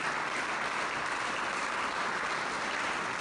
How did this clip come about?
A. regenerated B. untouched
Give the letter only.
B